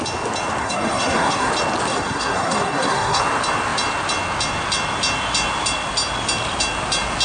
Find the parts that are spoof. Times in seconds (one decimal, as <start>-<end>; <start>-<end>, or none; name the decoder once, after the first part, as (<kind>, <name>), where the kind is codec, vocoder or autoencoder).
0.6-1.5 (codec, SNAC); 1.9-3.2